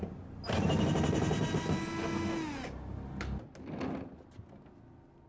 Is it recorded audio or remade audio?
recorded